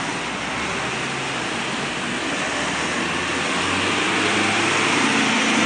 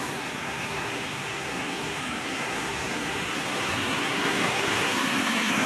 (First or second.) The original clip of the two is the first